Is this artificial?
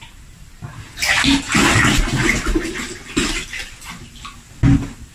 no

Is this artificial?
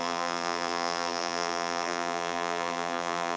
yes